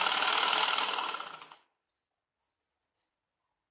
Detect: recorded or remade recorded